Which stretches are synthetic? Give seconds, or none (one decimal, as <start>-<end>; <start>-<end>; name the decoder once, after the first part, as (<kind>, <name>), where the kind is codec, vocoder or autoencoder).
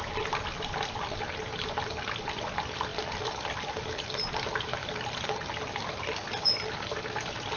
none